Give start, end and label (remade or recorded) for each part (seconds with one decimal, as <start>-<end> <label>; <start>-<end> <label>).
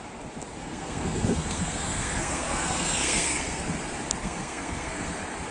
0.0-0.6 recorded; 0.6-3.6 remade; 3.6-4.2 recorded; 4.2-5.1 remade; 5.1-5.5 recorded